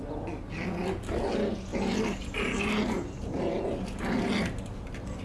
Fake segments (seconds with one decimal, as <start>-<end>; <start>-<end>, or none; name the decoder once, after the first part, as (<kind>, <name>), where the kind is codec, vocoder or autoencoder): none